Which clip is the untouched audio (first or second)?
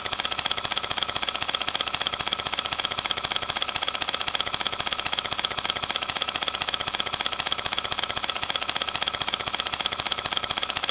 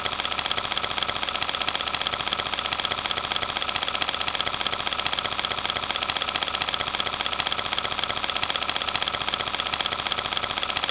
second